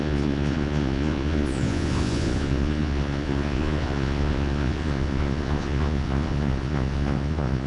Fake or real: fake